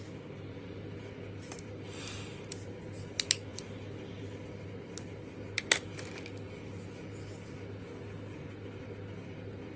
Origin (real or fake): real